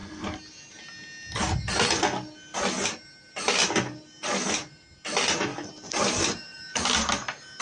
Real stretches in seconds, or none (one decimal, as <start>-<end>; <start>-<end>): 0.7-5.5; 6.8-7.6